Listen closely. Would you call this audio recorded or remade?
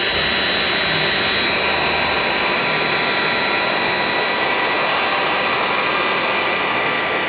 recorded